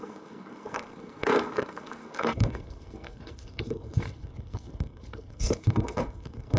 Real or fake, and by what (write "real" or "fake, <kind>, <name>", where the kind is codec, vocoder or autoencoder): fake, codec, SNAC